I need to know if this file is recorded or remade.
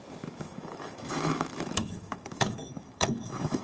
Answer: remade